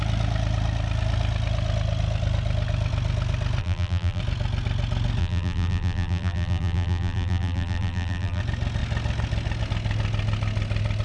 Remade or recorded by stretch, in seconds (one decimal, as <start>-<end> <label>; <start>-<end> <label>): 0.0-3.6 recorded; 3.6-4.2 remade; 4.2-5.2 recorded; 5.2-8.4 remade; 8.4-11.0 recorded